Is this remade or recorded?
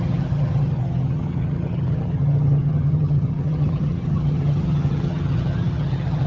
remade